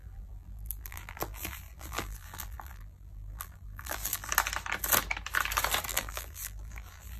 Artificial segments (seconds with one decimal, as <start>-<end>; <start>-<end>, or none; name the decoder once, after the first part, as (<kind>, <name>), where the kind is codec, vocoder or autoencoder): 0.0-4.3 (vocoder, BigVGAN v2); 5.9-7.2